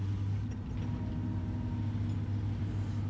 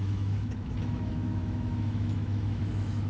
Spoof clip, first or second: second